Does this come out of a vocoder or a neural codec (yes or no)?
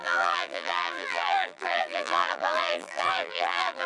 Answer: yes